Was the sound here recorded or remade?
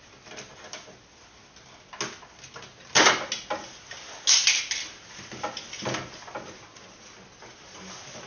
recorded